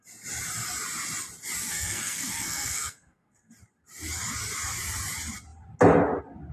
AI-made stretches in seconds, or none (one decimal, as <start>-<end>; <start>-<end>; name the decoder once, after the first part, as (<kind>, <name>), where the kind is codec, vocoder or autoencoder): 1.7-3.5 (codec, SNAC)